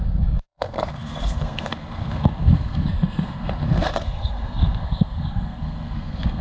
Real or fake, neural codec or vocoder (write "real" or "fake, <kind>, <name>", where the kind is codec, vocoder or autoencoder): fake, codec, SNAC